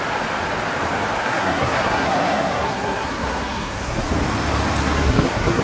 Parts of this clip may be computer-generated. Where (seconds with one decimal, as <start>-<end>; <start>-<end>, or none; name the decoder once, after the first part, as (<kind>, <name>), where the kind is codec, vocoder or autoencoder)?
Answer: 1.2-4.0 (codec, SNAC); 4.8-5.6